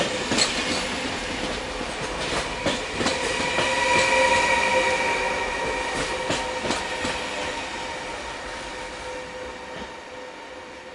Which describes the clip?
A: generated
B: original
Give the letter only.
B